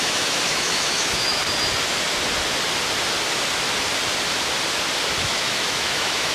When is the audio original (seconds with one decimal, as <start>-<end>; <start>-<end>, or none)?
1.4-5.2